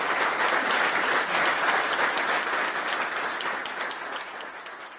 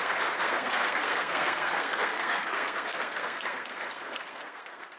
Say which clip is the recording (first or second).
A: first